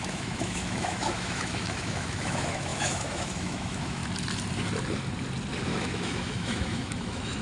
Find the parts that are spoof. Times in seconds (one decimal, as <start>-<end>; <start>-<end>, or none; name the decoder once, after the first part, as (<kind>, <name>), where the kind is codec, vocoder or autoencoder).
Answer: 0.0-4.0 (autoencoder, DAC-VAE); 5.6-7.4